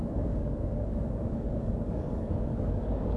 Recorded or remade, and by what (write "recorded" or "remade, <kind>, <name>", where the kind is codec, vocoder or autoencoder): remade, codec, DAC